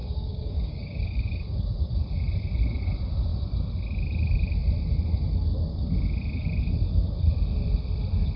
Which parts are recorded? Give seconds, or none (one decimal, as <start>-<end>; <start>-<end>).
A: 1.6-8.4